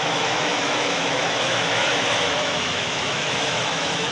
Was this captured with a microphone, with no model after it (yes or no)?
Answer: no